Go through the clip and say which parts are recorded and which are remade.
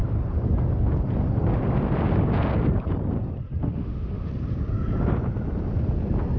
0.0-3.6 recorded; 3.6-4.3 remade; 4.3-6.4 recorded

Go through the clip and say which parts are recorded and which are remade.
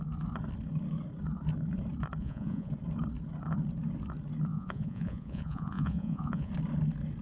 0.0-2.2 recorded; 2.2-2.7 remade; 2.7-4.5 recorded; 4.5-6.5 remade; 6.5-7.2 recorded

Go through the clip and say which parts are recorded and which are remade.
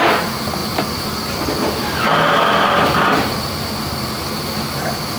0.0-0.6 recorded; 0.6-3.7 remade; 3.7-5.2 recorded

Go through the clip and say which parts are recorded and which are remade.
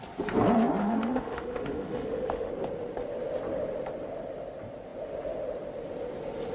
0.0-0.8 recorded; 0.8-2.5 remade; 2.5-6.5 recorded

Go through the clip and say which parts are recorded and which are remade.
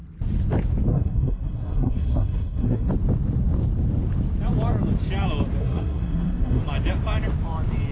0.0-0.9 recorded; 0.9-2.9 remade; 2.9-5.6 recorded; 5.6-6.6 remade; 6.6-7.9 recorded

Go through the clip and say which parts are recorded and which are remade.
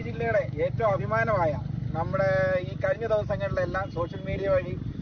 0.0-1.0 remade; 1.0-5.0 recorded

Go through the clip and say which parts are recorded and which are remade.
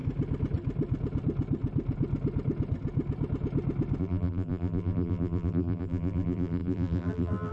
0.0-4.0 recorded; 4.0-7.5 remade